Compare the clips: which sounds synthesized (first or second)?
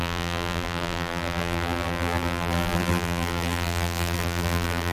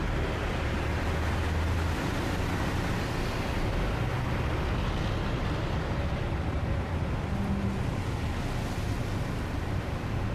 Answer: first